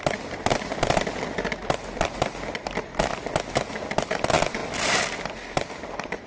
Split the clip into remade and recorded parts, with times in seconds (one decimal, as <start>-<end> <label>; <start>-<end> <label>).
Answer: 0.0-6.3 recorded